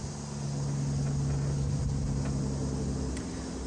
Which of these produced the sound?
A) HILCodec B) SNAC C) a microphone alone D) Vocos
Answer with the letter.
C